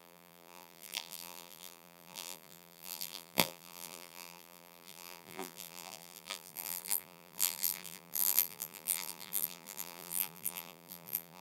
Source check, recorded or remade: remade